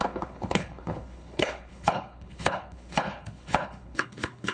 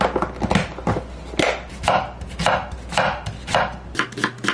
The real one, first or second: second